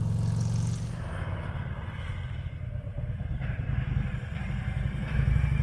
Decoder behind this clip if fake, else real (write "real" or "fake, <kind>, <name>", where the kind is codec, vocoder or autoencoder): real